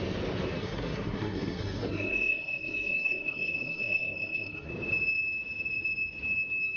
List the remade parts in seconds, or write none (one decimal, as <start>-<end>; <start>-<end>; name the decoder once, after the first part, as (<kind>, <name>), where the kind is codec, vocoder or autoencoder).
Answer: 0.6-4.7 (codec, SNAC)